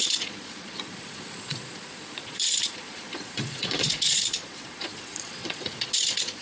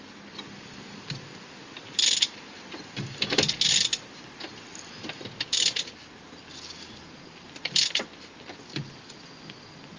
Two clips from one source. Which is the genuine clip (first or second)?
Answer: second